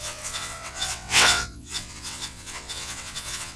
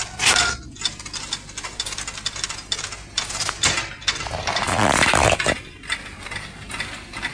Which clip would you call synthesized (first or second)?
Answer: first